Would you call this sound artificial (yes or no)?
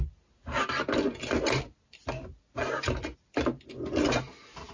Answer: no